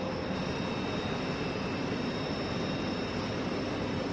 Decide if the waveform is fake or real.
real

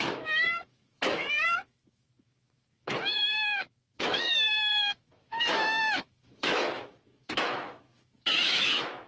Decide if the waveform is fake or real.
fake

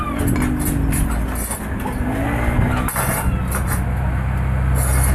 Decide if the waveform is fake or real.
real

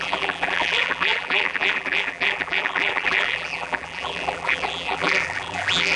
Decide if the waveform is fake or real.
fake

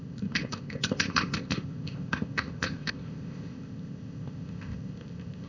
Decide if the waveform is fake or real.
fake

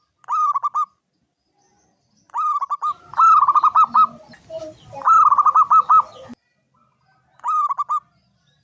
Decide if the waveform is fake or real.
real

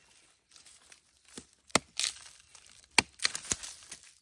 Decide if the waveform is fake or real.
real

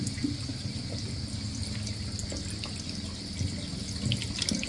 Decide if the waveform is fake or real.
real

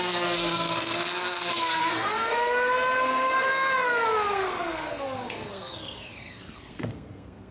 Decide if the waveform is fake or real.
fake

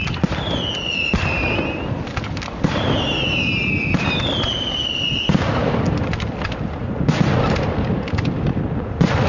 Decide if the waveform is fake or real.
real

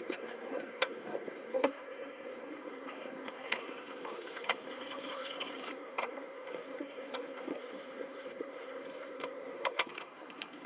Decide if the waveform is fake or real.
fake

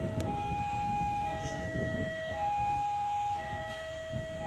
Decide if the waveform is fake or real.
fake